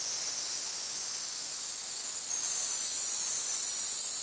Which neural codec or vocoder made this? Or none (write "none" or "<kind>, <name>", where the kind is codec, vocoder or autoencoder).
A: vocoder, Vocos